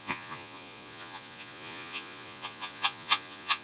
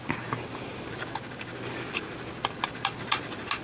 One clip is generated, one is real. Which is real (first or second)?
second